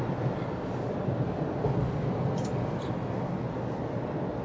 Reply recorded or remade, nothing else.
recorded